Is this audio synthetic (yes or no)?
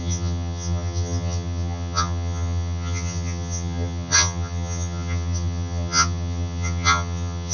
yes